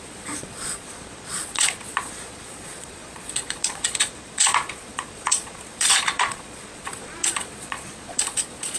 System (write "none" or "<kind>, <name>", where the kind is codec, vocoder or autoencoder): vocoder, Vocos